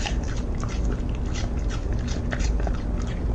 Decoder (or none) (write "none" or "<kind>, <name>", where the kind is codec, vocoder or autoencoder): none